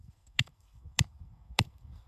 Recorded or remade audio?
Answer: remade